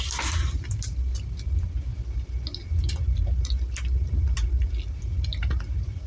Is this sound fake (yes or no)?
no